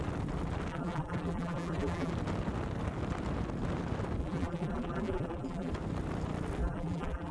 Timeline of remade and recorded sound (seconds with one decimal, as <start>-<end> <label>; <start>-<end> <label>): 0.0-0.7 recorded; 0.7-2.1 remade; 2.1-4.2 recorded; 4.2-5.7 remade; 5.7-6.6 recorded; 6.6-7.3 remade